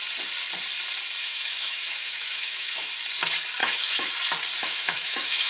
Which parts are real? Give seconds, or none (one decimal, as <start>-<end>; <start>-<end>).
0.0-1.2; 2.9-3.6; 4.1-4.6